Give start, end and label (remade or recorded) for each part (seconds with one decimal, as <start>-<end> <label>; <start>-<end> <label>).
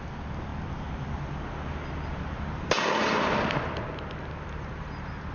0.0-5.3 recorded